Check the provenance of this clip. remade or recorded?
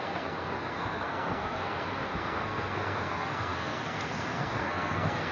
remade